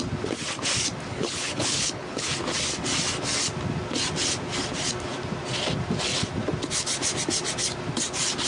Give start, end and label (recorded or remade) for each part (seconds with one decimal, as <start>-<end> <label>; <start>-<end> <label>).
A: 0.0-1.1 recorded; 1.1-2.3 remade; 2.3-8.5 recorded